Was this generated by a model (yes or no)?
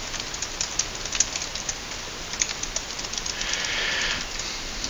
no